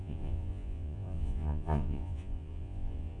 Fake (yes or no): yes